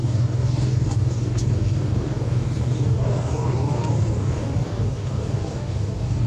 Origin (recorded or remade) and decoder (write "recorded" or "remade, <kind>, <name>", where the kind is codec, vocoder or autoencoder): remade, codec, DAC